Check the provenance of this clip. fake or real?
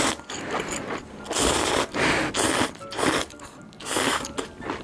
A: real